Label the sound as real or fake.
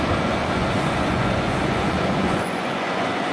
fake